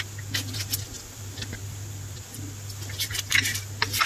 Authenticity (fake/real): real